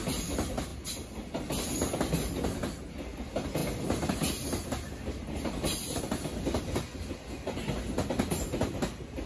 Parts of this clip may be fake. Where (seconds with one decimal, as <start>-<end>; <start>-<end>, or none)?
none